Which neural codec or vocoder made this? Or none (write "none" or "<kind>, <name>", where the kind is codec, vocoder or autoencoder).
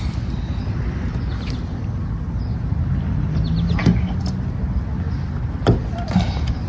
none